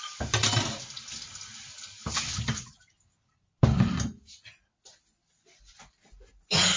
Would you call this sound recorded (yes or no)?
yes